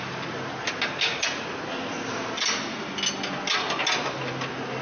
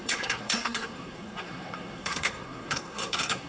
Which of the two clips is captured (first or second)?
first